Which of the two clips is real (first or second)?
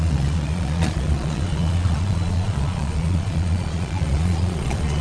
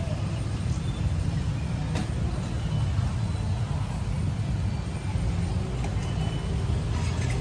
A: second